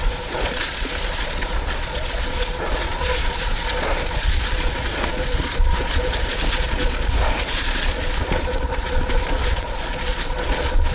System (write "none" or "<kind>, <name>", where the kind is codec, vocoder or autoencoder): vocoder, Vocos